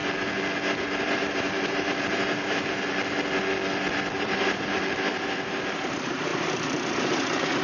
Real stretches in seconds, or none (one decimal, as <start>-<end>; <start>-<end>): 0.0-0.9; 2.9-4.2; 6.3-6.8